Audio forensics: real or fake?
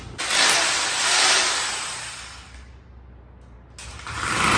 real